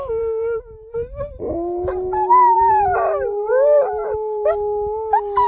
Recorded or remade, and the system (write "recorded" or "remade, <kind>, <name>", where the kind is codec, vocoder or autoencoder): remade, vocoder, BigVGAN v2